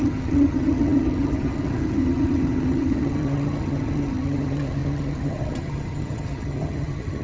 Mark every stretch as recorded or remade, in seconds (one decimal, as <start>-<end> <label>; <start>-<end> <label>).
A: 0.0-7.2 remade